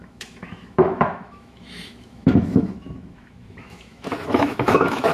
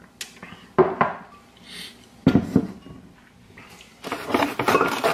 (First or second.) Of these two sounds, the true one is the second